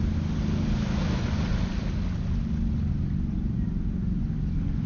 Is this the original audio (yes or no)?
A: yes